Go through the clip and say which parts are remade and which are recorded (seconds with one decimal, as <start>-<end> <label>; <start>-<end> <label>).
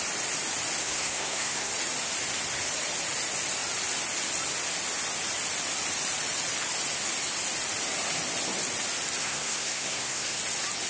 0.0-0.8 recorded; 0.8-1.7 remade; 1.7-9.2 recorded; 9.2-10.4 remade; 10.4-10.9 recorded